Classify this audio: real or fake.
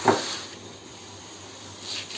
real